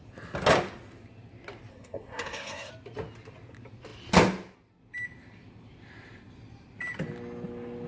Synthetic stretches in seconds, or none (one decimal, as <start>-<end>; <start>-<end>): 1.7-2.7